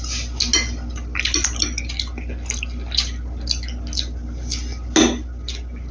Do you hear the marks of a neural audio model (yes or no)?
no